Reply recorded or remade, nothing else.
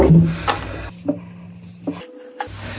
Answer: recorded